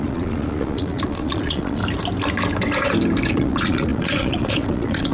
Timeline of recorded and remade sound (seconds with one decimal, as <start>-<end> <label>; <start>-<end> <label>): 0.0-1.8 remade; 1.8-3.3 recorded; 3.3-5.1 remade